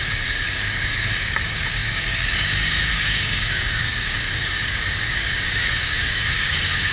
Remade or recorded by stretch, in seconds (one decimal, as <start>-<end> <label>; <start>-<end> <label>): 0.0-6.9 remade